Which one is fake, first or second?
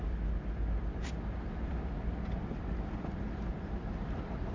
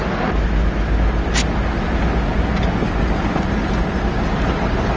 first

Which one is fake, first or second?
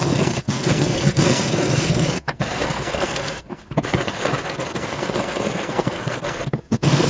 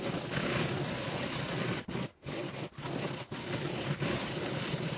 first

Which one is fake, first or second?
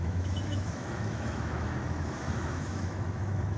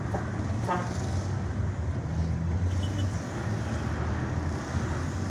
first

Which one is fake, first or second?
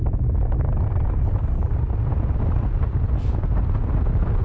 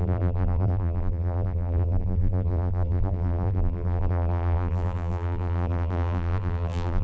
second